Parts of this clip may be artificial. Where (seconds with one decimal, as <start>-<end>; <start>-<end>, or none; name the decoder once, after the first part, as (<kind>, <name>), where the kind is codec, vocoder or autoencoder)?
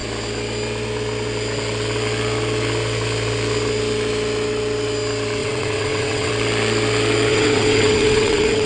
5.4-6.3 (vocoder, WaveNeXt); 7.3-8.7